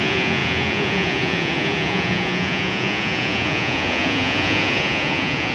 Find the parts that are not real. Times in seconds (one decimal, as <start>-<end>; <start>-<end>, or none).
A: 0.0-5.5